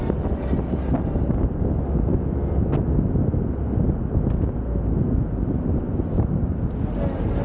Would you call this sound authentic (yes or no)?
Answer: yes